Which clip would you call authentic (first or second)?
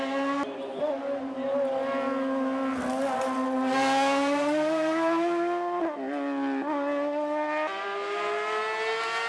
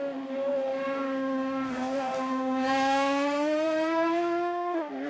first